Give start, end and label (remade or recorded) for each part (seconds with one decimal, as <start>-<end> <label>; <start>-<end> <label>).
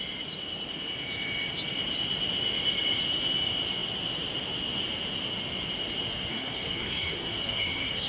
0.0-6.3 recorded; 6.3-8.1 remade